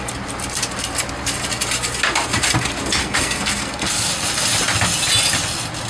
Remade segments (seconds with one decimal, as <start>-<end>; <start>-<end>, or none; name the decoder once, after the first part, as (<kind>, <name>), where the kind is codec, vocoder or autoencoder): 3.0-4.1 (codec, SNAC)